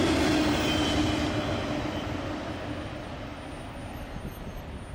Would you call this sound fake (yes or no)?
no